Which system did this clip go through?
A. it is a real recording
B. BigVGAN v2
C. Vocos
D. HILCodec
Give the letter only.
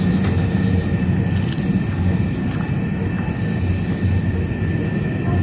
A